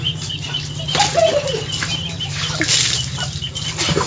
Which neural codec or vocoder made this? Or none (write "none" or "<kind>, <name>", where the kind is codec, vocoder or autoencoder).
none